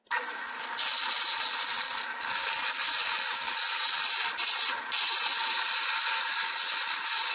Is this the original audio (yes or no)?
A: no